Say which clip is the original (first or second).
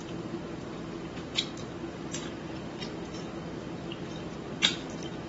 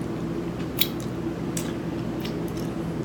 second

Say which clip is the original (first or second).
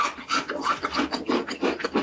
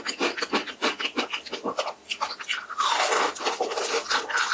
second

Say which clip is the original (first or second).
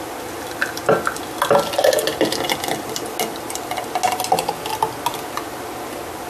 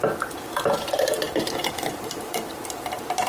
first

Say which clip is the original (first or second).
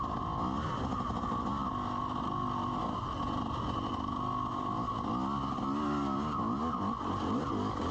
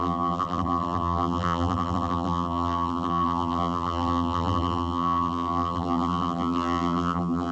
first